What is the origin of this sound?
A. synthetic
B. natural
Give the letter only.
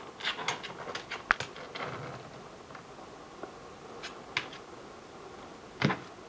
B